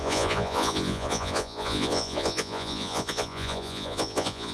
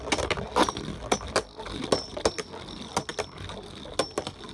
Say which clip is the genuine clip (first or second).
second